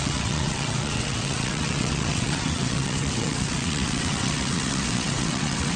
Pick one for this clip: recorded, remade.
remade